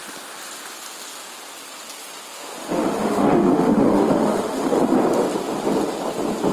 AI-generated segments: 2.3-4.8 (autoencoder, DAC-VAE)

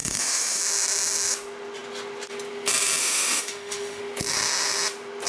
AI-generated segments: 0.0-0.6 (autoencoder, DAC-VAE); 3.0-4.0

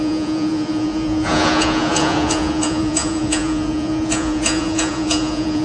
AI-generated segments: 0.0-5.6 (vocoder, Vocos)

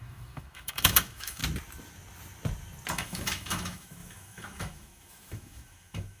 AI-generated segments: 0.0-1.4 (autoencoder, DAC-VAE); 2.9-6.2

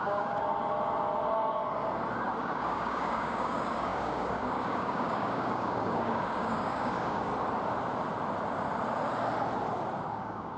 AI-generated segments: 0.0-0.4 (codec, DAC); 2.4-7.3; 10.1-10.6

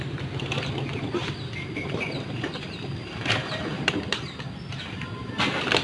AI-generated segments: 1.2-3.9 (vocoder, BigVGAN v2)

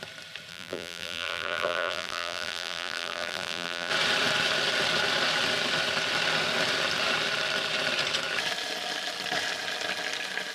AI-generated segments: 0.5-3.9 (vocoder, BigVGAN v2)